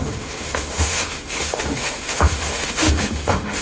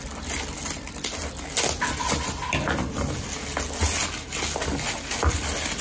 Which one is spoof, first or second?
first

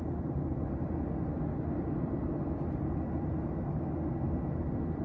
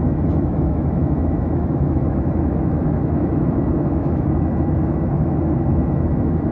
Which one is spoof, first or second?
second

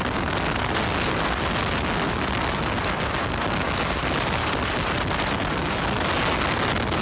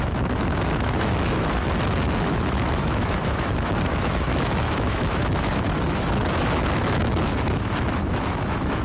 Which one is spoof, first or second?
second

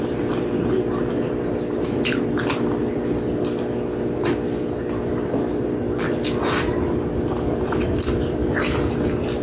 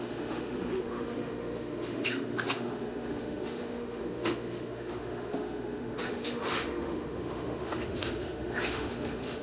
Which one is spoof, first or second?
second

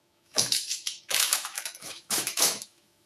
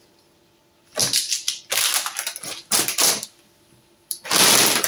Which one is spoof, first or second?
first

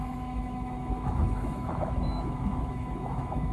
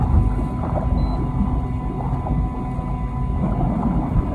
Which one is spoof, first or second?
first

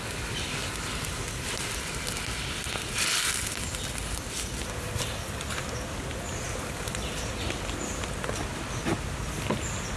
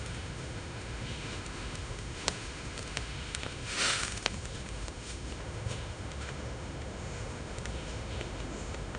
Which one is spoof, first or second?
second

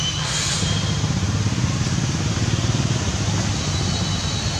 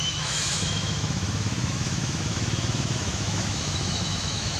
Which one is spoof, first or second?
second